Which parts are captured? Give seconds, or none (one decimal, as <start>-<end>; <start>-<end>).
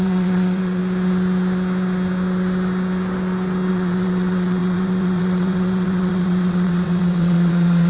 0.8-3.7